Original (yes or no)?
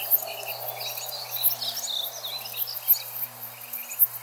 yes